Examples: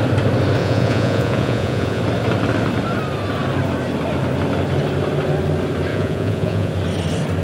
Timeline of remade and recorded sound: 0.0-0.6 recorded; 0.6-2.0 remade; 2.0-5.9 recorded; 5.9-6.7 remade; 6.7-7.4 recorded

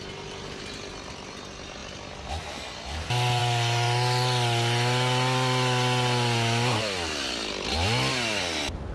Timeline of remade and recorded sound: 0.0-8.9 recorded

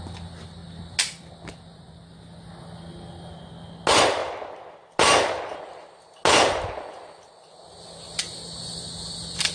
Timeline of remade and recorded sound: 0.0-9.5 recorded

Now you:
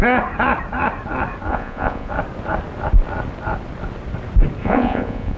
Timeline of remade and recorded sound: 0.0-1.5 recorded; 1.5-2.1 remade; 2.1-4.6 recorded; 4.6-5.4 remade

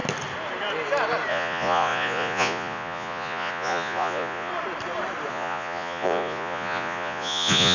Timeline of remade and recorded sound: 0.0-1.3 recorded; 1.3-4.5 remade; 4.5-5.3 recorded; 5.3-7.7 remade

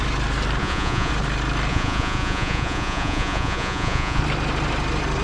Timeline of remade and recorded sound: 0.0-0.6 recorded; 0.6-1.1 remade; 1.1-1.7 recorded; 1.7-4.2 remade; 4.2-5.2 recorded

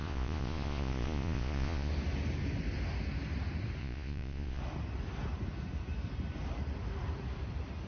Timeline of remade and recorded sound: 0.0-1.9 remade; 1.9-3.8 recorded; 3.8-4.6 remade; 4.6-7.9 recorded

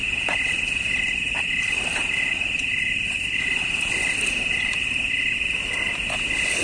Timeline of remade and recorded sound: 0.0-6.6 recorded